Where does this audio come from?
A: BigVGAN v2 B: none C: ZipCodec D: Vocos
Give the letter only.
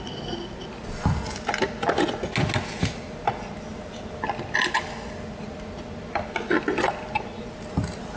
B